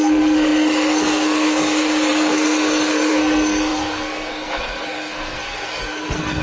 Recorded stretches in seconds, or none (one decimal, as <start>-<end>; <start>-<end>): none